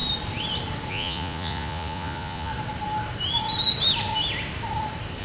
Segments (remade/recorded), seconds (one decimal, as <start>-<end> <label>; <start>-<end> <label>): 0.0-0.9 recorded; 0.9-2.5 remade; 2.5-5.2 recorded